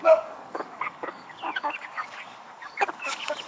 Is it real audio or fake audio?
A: fake